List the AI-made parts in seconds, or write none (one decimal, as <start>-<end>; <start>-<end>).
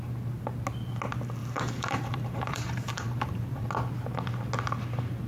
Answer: 1.4-3.7